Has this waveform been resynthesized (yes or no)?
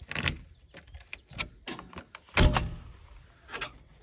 no